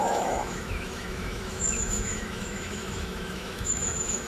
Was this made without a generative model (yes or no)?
no